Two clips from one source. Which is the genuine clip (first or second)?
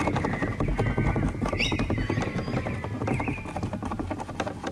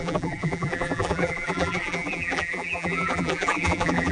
first